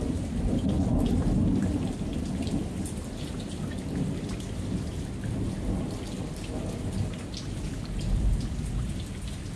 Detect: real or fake real